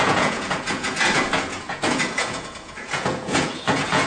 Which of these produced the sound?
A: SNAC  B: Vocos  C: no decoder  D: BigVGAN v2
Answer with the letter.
B